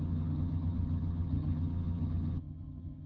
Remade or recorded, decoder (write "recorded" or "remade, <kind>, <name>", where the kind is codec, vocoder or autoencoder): remade, vocoder, HiFi-GAN